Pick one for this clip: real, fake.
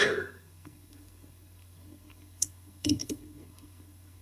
fake